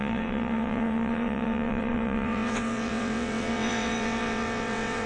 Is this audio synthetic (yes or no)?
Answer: yes